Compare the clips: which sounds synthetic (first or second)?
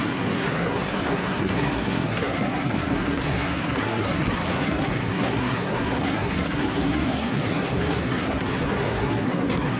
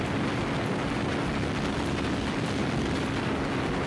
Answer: first